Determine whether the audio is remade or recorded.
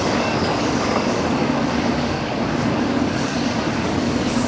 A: remade